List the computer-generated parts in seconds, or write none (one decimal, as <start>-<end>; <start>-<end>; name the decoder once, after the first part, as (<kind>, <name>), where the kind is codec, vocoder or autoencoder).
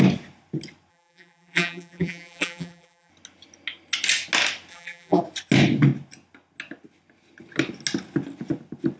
0.9-3.1 (vocoder, BigVGAN v2); 4.7-5.2